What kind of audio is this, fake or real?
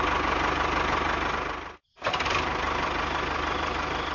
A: real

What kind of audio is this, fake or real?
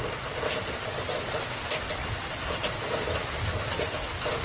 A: real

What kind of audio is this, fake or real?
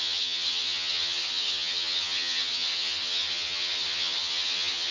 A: fake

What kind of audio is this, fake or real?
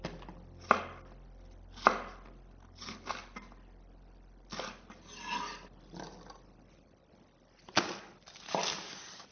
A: real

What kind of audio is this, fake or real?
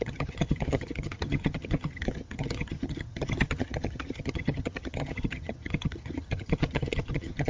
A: fake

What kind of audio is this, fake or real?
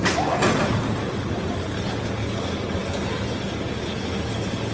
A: real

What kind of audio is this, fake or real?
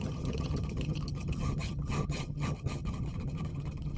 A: fake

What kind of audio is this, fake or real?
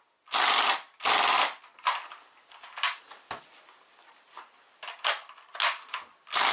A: real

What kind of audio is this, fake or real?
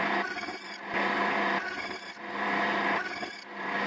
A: real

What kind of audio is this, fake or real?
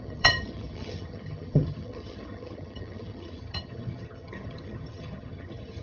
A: fake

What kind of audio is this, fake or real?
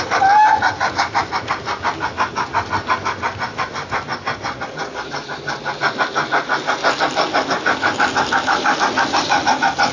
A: real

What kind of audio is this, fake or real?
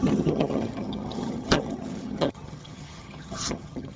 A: fake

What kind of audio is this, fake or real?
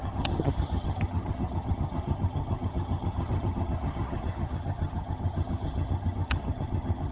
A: fake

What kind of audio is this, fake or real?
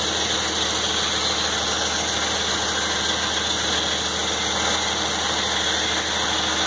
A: real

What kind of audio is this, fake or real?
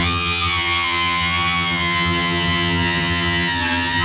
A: fake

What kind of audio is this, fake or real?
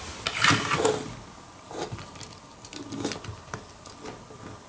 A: real